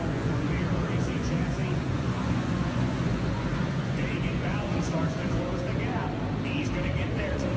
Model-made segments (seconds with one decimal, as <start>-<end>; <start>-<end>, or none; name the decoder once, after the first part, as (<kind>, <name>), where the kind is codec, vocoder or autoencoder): 0.0-6.0 (vocoder, Vocos); 6.8-7.6